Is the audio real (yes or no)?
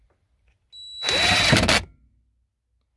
yes